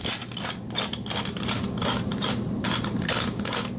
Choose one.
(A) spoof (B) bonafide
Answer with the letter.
B